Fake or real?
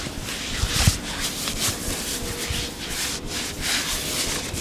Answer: real